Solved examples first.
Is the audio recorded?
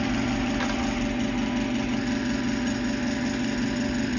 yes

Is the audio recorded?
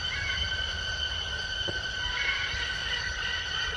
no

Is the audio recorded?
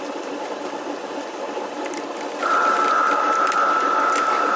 yes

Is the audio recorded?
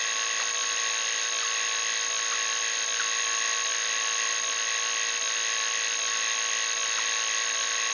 yes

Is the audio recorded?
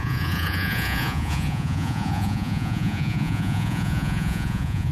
no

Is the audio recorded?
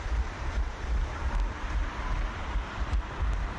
no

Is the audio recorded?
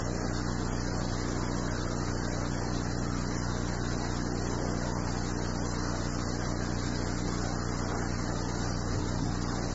yes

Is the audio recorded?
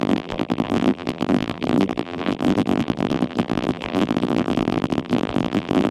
no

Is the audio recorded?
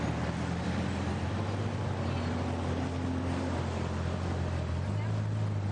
yes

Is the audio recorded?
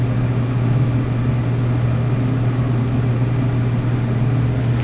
yes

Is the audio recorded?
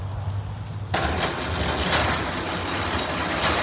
yes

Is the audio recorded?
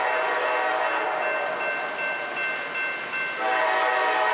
yes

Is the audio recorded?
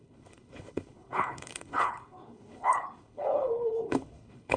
no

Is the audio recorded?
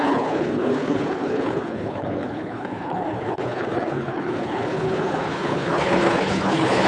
no